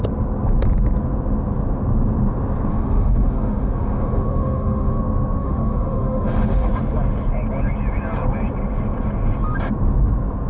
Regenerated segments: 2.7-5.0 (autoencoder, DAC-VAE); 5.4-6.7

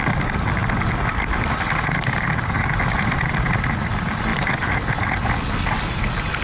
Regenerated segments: none

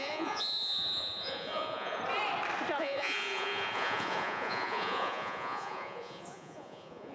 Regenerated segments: 0.0-2.0 (vocoder, Vocos); 2.8-7.1

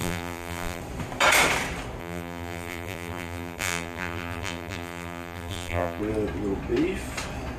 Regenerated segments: 0.0-0.8 (vocoder, BigVGAN v2); 2.0-6.0

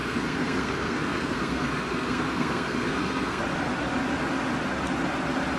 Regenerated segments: 0.0-3.4 (codec, SNAC)